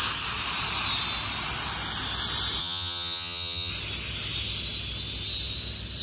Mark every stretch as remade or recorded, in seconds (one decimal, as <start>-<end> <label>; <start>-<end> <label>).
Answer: 0.0-2.6 recorded; 2.6-3.7 remade; 3.7-6.0 recorded